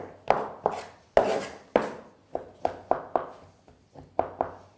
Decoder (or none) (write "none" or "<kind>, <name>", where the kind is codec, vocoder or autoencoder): none